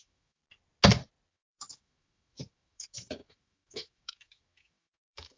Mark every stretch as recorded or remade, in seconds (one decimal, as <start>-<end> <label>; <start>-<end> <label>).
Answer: 0.0-0.4 remade; 0.4-1.3 recorded; 1.3-5.4 remade